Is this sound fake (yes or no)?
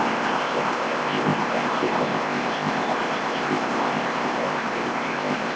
yes